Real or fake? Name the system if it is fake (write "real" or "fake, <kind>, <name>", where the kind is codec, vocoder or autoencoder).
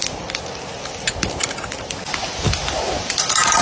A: real